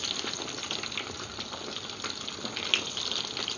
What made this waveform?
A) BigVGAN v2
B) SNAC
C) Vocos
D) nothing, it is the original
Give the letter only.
D